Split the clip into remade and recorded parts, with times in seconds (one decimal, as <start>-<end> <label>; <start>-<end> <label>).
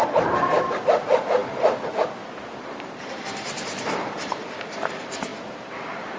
0.0-1.4 remade; 1.4-1.9 recorded; 1.9-6.2 remade